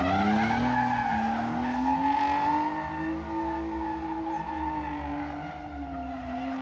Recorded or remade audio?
recorded